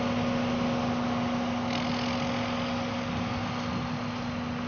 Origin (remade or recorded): recorded